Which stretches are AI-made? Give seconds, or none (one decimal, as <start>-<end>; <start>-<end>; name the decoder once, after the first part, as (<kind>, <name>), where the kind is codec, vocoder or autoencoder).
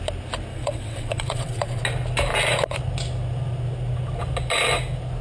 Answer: 0.5-1.8 (vocoder, WaveNeXt)